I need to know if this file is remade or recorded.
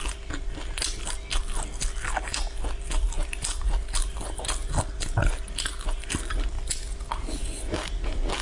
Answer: recorded